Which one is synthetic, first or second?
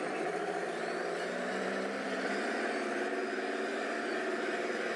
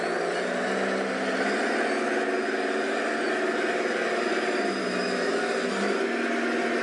first